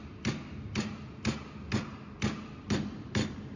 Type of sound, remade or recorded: recorded